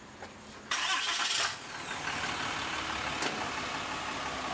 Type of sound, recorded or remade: recorded